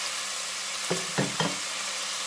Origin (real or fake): real